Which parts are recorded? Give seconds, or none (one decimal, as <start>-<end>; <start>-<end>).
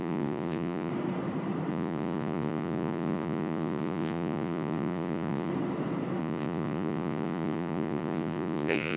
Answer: 0.9-1.7; 5.5-6.2